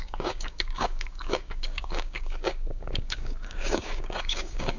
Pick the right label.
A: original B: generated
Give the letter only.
B